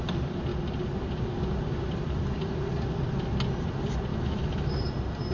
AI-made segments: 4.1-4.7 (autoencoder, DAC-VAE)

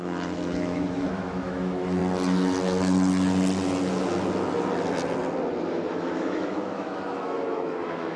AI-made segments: 0.0-2.0 (autoencoder, DAC-VAE); 5.7-8.2